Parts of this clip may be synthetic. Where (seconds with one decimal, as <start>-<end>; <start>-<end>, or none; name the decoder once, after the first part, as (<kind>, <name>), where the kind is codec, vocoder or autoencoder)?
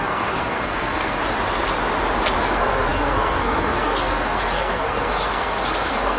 0.0-1.2 (codec, SNAC); 2.4-6.2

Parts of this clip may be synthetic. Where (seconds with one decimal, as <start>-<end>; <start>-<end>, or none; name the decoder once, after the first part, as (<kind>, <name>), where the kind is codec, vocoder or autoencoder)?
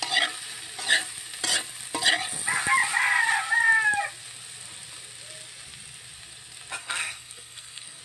6.8-8.0 (codec, SNAC)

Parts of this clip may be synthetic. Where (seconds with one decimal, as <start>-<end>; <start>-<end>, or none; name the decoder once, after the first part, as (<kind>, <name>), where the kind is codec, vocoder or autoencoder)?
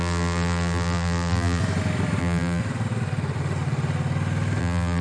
0.0-1.6 (vocoder, BigVGAN v2); 2.2-2.6; 4.6-5.0